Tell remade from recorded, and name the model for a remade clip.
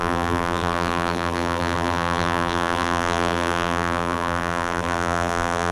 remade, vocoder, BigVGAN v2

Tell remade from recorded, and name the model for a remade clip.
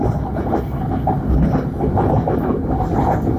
recorded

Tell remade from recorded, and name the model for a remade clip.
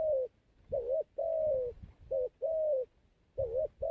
recorded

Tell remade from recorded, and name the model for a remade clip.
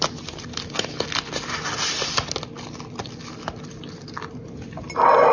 recorded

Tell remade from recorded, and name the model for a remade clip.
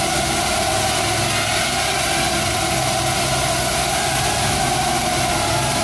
recorded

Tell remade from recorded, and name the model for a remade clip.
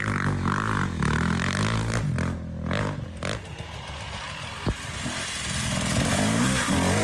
recorded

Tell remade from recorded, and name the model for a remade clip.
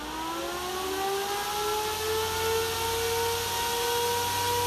recorded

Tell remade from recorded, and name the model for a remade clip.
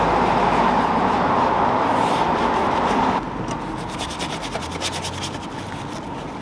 recorded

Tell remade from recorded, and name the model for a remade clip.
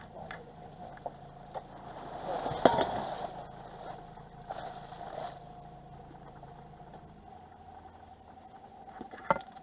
recorded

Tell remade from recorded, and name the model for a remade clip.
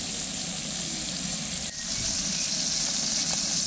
recorded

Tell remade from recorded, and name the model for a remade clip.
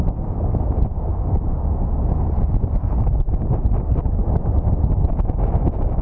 recorded